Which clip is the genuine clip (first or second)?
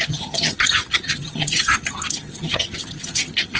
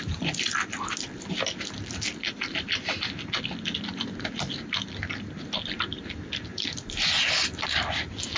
second